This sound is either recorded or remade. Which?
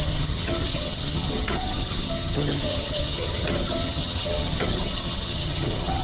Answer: remade